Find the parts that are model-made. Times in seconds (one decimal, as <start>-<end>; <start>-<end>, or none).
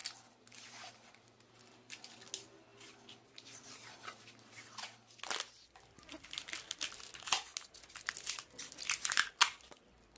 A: none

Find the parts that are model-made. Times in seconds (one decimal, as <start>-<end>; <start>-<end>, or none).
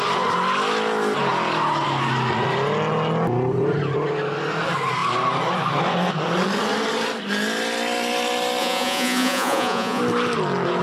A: 8.6-10.0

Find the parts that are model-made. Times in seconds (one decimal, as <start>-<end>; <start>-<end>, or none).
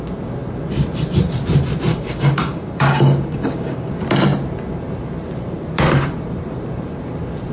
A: 1.9-3.9